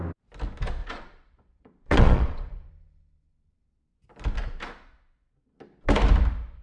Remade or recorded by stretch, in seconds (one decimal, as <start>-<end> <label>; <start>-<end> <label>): 0.0-0.8 recorded; 0.8-2.7 remade; 2.7-6.6 recorded